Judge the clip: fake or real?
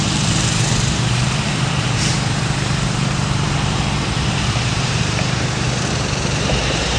fake